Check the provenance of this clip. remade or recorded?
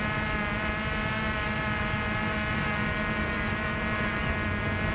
recorded